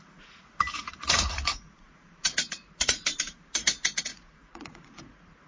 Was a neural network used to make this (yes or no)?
yes